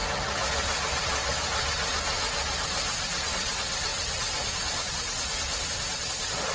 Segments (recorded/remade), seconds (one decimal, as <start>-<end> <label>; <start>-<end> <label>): 0.0-3.3 recorded; 3.3-6.5 remade